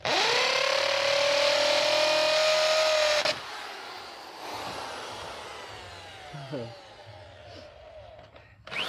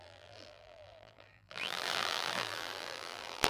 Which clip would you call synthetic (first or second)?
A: second